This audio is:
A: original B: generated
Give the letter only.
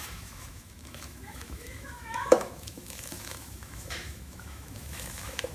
B